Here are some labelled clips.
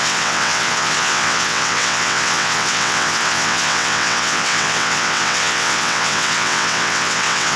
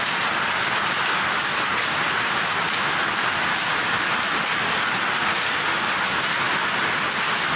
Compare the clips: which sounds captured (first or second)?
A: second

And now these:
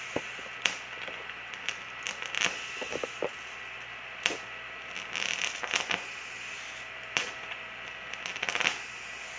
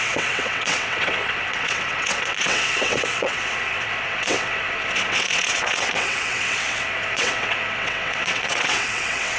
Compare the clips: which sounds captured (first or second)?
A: first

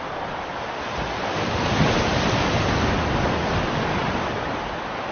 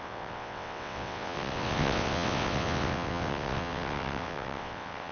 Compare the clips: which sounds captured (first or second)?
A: first